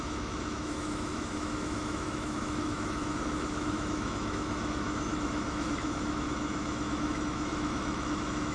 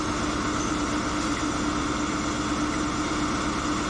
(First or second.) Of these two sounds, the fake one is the first